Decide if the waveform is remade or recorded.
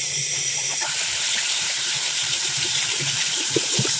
remade